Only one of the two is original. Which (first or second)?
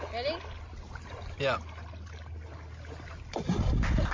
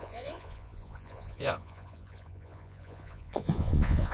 first